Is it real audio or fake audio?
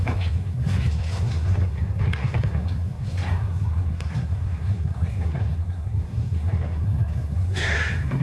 fake